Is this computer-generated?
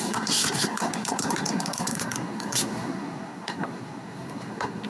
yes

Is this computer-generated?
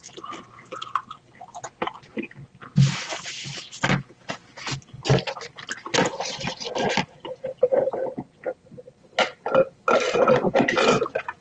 no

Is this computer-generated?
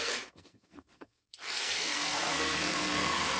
yes